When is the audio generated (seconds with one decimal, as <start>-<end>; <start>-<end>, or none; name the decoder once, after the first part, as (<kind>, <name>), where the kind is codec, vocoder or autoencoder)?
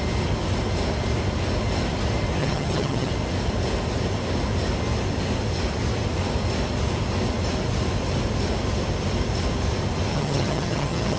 2.4-3.1 (vocoder, HiFi-GAN); 10.1-11.2